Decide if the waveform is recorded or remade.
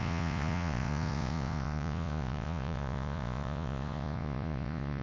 remade